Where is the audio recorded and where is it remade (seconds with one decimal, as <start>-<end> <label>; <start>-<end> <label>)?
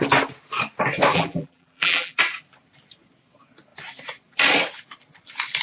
0.0-1.1 recorded; 1.1-2.2 remade; 2.2-5.6 recorded